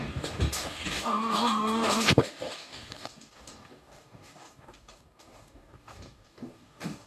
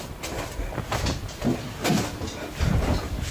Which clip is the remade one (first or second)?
first